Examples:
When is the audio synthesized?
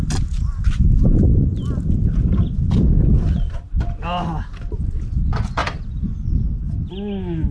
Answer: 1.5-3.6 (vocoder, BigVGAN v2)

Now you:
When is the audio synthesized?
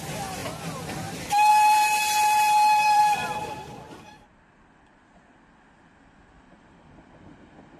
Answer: 1.5-3.0 (vocoder, BigVGAN v2)